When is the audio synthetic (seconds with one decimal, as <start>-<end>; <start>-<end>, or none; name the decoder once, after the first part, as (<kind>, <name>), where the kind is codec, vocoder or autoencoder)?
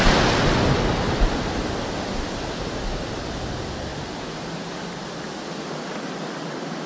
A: none